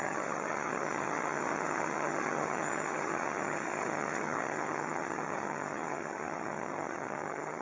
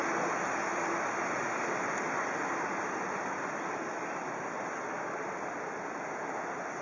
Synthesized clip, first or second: first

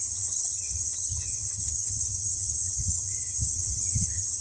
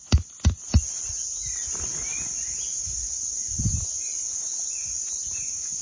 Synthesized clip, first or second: first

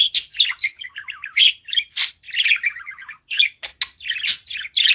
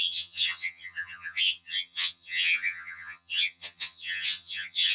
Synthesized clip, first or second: second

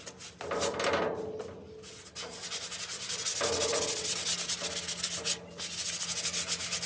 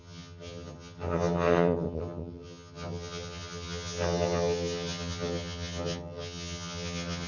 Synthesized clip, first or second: second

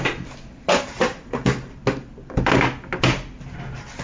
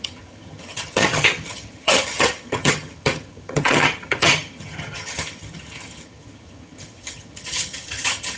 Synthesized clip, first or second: second